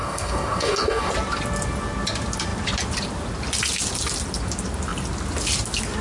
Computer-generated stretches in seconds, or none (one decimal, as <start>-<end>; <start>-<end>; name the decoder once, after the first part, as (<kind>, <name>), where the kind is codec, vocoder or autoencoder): 0.0-1.1 (codec, DAC)